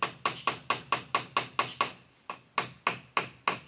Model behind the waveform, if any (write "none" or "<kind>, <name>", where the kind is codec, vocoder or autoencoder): none